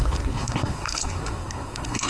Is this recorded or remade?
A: remade